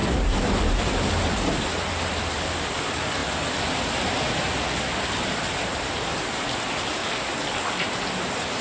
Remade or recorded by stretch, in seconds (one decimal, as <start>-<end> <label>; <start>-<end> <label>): 0.0-3.2 remade; 3.2-4.8 recorded; 4.8-7.0 remade; 7.0-7.7 recorded; 7.7-8.6 remade